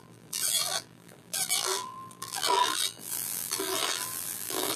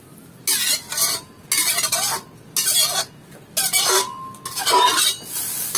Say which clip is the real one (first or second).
second